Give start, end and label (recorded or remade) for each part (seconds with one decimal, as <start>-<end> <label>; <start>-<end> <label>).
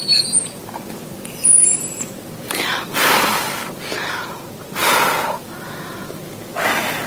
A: 0.0-0.6 recorded; 0.6-4.2 remade; 4.2-4.8 recorded; 4.8-6.5 remade; 6.5-7.1 recorded